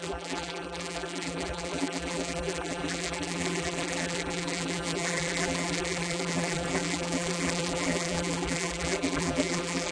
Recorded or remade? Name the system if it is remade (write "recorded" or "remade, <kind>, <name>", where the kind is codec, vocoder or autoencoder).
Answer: remade, vocoder, BigVGAN v2